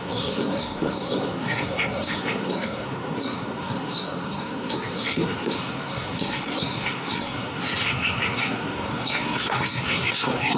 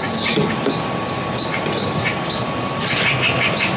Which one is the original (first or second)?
second